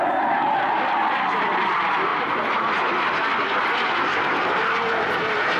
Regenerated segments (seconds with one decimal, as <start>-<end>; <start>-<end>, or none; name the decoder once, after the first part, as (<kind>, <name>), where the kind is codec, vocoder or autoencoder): none